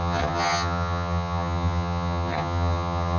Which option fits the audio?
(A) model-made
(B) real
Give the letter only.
A